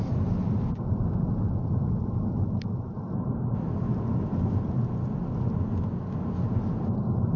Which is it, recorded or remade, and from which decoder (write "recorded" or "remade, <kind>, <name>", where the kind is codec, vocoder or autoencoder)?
recorded